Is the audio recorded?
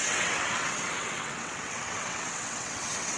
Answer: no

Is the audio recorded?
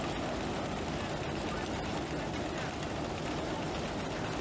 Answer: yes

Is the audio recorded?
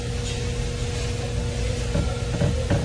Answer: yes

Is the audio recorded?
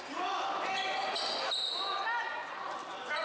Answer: yes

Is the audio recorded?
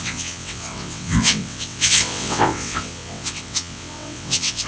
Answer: no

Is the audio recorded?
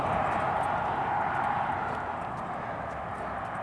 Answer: yes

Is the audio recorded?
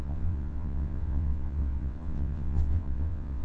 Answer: no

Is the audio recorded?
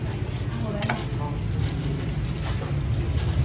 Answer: yes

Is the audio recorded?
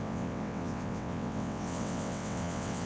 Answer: no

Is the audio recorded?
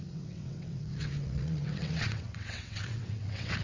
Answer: no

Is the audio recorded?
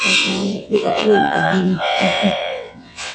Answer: no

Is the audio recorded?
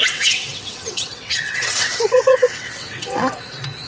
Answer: no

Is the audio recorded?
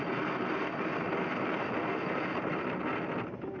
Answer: yes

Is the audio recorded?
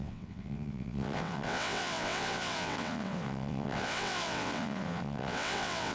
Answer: no